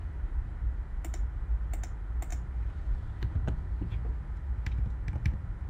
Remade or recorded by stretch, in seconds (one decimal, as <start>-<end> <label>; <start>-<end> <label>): 0.0-2.3 recorded; 2.3-3.0 remade; 3.0-5.7 recorded